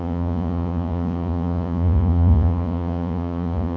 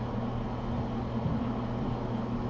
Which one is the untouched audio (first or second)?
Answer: second